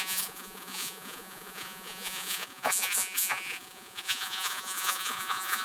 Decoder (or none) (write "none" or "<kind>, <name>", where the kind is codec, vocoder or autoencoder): vocoder, Vocos